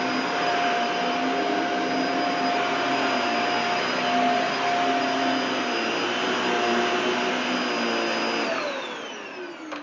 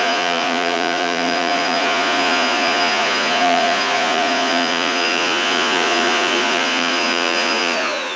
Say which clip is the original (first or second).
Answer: first